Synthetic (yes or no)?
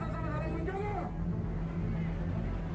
no